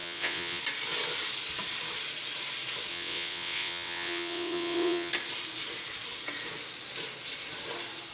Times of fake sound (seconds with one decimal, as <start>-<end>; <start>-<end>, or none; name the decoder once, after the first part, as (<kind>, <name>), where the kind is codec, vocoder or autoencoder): 0.0-0.6 (vocoder, WaveNeXt); 2.9-5.1